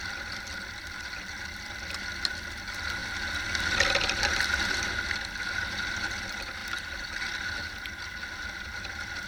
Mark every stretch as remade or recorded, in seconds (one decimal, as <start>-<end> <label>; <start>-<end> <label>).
0.0-9.3 recorded